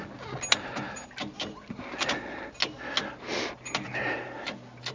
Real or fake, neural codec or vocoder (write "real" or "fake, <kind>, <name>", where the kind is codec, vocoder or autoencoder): real